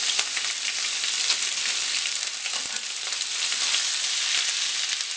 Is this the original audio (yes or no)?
yes